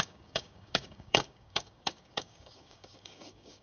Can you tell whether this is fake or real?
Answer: fake